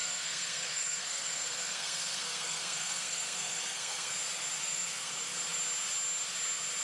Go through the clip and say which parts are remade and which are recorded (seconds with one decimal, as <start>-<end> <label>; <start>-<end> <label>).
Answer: 0.0-4.1 remade; 4.1-4.6 recorded; 4.6-5.1 remade; 5.1-6.8 recorded